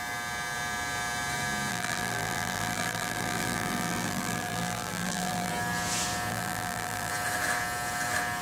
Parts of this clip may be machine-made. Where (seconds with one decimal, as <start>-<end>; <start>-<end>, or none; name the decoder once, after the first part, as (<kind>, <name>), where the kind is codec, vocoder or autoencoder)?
1.7-5.5 (vocoder, BigVGAN v2); 6.3-7.1